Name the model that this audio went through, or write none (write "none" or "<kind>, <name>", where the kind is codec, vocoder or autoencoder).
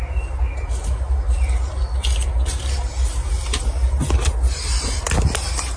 none